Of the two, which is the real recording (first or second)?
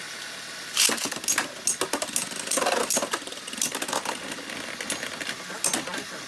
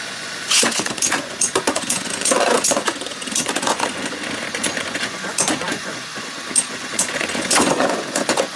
first